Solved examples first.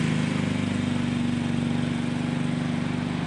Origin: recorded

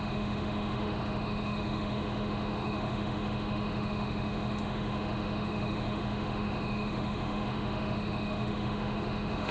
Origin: remade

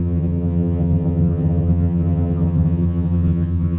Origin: remade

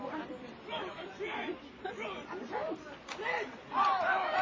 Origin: recorded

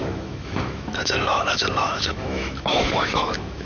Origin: remade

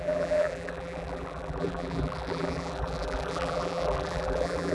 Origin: remade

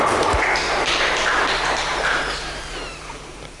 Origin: remade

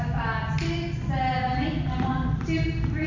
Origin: recorded